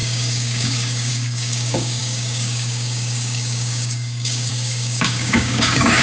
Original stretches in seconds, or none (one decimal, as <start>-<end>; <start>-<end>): none